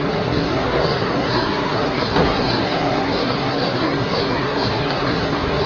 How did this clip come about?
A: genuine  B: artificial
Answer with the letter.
B